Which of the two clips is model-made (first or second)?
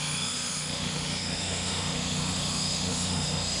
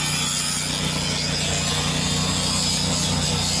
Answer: first